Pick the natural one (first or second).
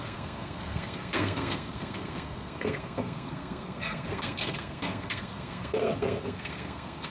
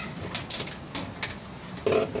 second